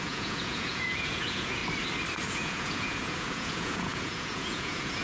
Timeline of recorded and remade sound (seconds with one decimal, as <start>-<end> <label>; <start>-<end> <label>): 0.0-1.6 remade; 1.6-2.3 recorded; 2.3-5.0 remade